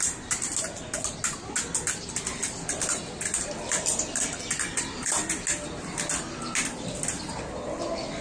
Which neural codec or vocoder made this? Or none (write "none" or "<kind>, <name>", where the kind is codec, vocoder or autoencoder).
none